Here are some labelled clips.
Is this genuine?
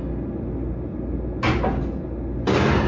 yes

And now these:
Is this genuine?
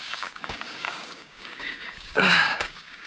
no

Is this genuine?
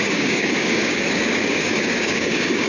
no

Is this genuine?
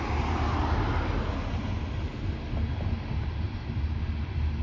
yes